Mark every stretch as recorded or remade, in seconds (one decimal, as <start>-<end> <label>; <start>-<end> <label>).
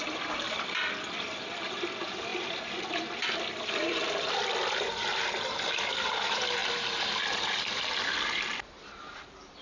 0.0-4.4 remade; 4.4-6.1 recorded; 6.1-9.6 remade